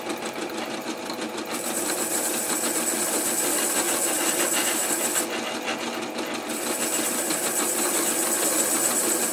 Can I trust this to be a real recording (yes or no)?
yes